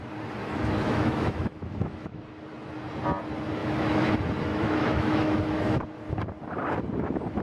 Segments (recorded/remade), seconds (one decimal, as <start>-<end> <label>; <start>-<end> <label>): 0.0-0.4 recorded; 0.4-2.2 remade; 2.2-3.6 recorded; 3.6-4.1 remade; 4.1-4.5 recorded; 4.5-5.8 remade; 5.8-7.4 recorded